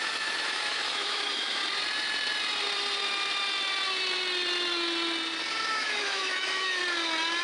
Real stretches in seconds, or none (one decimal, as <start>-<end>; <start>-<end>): 1.6-5.7; 6.8-7.4